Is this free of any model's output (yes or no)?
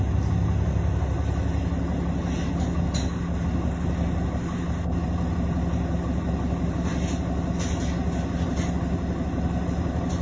yes